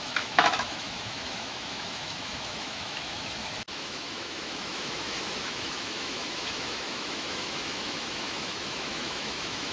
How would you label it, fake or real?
fake